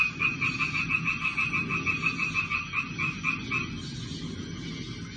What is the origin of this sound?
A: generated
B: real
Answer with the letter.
B